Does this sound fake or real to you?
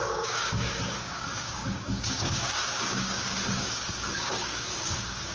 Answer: fake